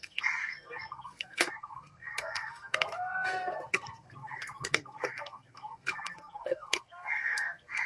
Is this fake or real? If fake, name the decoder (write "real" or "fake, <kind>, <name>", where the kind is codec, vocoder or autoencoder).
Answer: fake, codec, SNAC